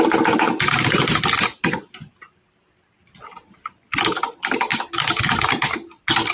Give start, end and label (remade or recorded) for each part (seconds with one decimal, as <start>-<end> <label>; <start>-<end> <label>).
0.0-6.3 recorded